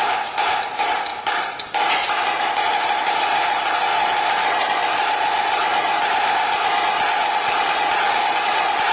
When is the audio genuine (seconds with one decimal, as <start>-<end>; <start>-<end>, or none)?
0.0-8.9